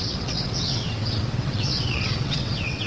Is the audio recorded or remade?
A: remade